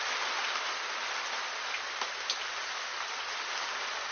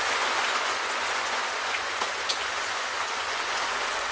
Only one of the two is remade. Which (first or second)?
second